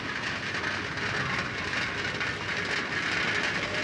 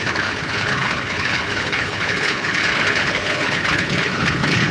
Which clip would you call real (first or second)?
first